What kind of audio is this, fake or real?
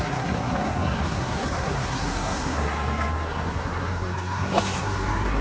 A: fake